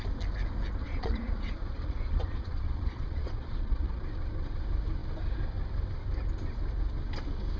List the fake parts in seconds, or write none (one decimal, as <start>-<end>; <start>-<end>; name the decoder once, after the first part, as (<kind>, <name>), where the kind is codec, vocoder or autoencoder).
0.8-4.0 (vocoder, Vocos)